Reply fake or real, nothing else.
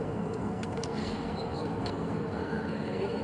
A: fake